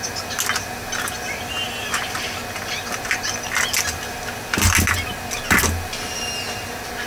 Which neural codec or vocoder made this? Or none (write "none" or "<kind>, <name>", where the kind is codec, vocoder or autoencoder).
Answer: none